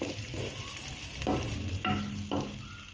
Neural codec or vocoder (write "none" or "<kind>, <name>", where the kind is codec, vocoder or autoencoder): none